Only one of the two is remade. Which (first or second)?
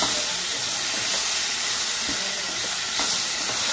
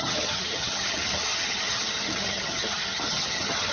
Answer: second